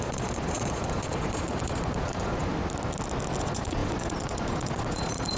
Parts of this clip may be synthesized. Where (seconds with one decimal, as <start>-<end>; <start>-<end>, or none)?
0.0-2.5; 3.4-5.4